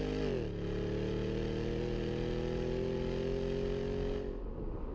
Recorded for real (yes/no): yes